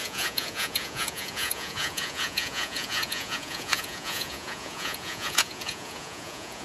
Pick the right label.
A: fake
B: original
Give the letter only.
A